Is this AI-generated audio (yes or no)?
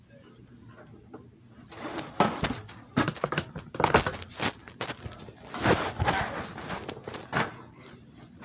no